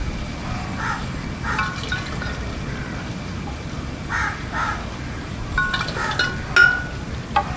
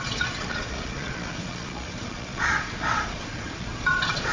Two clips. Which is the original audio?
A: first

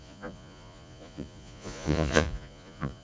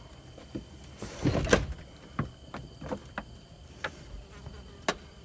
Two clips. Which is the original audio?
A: second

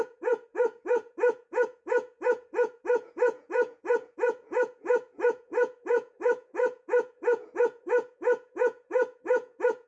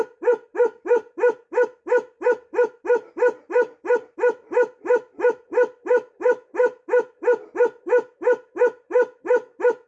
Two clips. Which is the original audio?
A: second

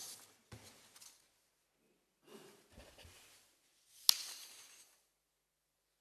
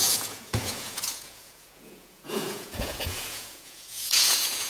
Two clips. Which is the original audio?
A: first